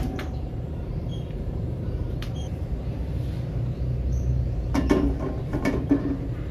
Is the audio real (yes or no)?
no